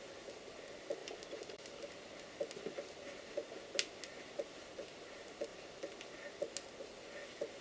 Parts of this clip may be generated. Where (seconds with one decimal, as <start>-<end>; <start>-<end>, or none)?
1.0-1.9; 5.5-6.4